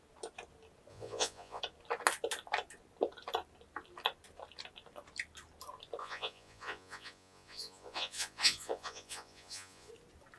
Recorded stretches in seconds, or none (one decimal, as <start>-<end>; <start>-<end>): 0.0-0.9; 1.6-6.0; 9.9-10.4